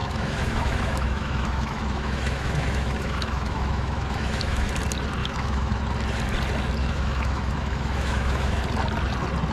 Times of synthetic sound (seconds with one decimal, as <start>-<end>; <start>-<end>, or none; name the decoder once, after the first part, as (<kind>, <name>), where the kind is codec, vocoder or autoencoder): 0.0-4.7 (autoencoder, DAC-VAE); 5.2-5.8; 6.8-8.6